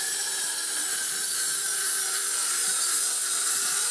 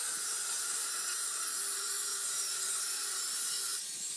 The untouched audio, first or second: second